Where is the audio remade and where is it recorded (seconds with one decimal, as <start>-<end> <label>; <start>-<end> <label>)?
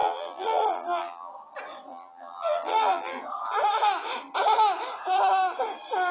0.0-1.3 remade; 1.3-1.9 recorded; 1.9-3.2 remade; 3.2-6.1 recorded